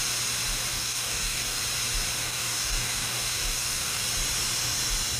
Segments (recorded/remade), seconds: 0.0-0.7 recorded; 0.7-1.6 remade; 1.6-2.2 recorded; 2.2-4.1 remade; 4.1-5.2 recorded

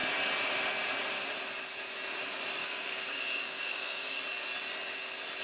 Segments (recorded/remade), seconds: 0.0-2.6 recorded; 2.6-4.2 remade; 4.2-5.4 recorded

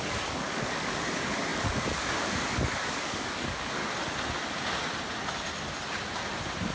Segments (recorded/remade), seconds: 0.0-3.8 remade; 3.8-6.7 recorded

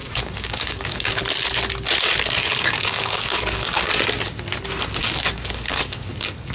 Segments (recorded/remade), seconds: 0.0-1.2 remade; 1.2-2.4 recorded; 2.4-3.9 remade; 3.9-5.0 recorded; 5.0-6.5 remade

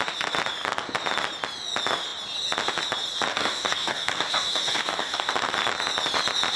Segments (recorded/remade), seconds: 0.0-3.3 recorded; 3.3-5.3 remade; 5.3-6.6 recorded

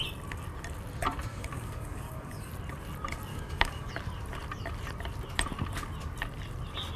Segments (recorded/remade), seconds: 0.0-1.3 recorded; 1.3-2.5 remade; 2.5-3.3 recorded; 3.3-3.9 remade; 3.9-7.0 recorded

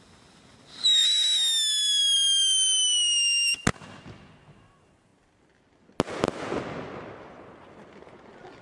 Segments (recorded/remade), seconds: 0.0-8.6 recorded

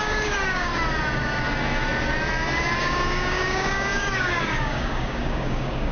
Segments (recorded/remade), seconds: 0.0-0.7 remade; 0.7-2.8 recorded; 2.8-5.9 remade